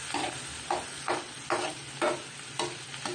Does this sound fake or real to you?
real